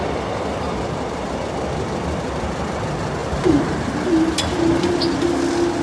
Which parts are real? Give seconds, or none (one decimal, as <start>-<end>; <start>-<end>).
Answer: 0.0-5.8